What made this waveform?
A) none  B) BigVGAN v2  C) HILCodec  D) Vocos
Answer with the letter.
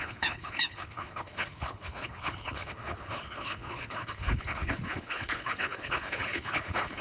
C